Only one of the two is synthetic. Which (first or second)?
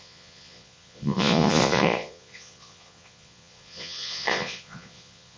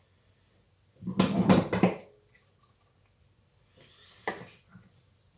first